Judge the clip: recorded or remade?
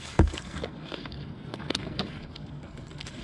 remade